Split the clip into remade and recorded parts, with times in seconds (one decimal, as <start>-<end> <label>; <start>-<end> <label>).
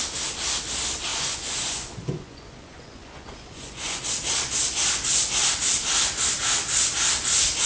0.0-1.1 recorded; 1.1-4.0 remade; 4.0-7.7 recorded